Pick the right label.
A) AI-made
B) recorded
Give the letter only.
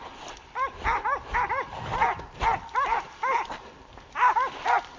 B